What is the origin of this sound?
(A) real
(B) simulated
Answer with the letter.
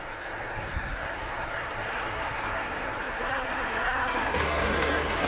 B